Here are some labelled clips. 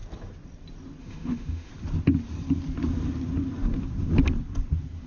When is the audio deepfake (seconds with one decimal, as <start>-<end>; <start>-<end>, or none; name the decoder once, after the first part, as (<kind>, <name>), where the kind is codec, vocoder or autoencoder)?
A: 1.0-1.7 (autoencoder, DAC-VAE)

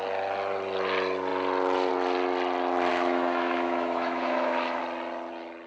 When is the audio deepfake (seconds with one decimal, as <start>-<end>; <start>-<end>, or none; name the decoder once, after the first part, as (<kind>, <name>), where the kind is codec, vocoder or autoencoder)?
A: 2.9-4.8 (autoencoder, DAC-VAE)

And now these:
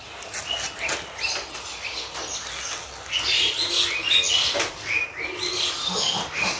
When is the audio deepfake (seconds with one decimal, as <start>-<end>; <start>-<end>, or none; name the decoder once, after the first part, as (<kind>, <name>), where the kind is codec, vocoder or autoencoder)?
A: 5.8-6.6 (autoencoder, DAC-VAE)

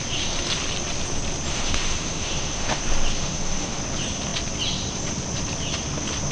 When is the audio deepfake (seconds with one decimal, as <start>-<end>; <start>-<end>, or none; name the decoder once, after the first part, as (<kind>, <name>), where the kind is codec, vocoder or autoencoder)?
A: 1.5-2.8 (autoencoder, DAC-VAE); 3.2-3.8